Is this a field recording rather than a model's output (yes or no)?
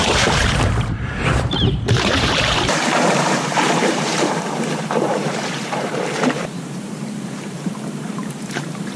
no